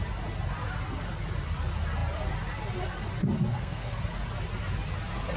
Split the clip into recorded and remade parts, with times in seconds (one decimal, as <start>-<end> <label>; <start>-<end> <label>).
0.0-3.5 recorded; 3.5-4.0 remade; 4.0-5.4 recorded